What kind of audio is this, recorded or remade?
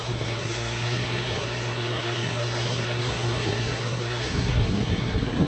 remade